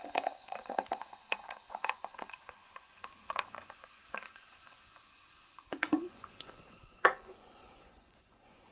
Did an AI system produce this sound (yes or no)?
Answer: yes